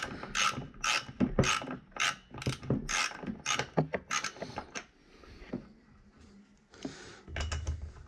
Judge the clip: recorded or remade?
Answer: recorded